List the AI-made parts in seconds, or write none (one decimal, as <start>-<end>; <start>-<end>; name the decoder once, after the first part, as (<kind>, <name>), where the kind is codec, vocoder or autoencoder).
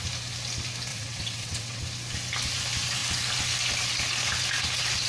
0.9-1.8 (vocoder, WaveNeXt)